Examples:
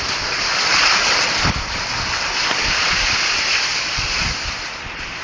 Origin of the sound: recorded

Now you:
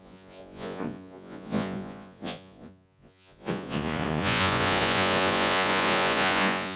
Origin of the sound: remade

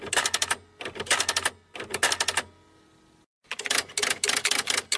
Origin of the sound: recorded